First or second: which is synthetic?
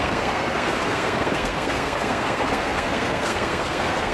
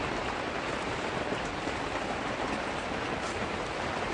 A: first